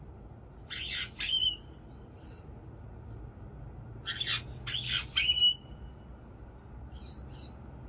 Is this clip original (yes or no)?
yes